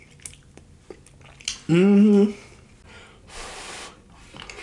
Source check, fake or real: real